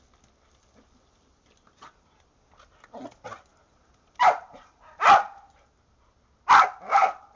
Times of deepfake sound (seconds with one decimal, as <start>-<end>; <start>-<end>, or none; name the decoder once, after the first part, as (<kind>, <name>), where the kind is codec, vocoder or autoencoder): 3.5-5.0 (vocoder, BigVGAN v2)